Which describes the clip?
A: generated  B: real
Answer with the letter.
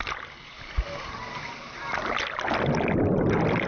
B